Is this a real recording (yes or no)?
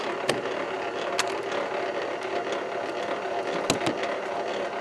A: yes